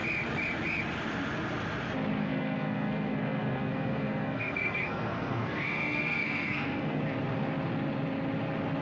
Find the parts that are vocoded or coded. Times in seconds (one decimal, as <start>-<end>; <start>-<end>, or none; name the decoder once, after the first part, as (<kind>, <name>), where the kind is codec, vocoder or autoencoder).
2.2-7.0 (codec, SNAC)